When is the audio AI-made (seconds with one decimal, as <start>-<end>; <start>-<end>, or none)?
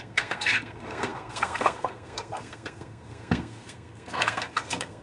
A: 0.0-5.0